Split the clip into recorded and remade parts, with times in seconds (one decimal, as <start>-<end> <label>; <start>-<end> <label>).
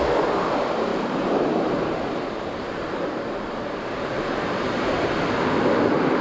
0.0-0.9 recorded; 0.9-4.6 remade; 4.6-6.2 recorded